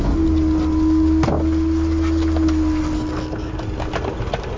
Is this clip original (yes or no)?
yes